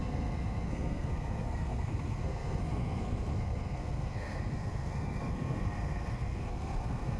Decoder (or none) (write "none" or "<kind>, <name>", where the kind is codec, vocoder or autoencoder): codec, SNAC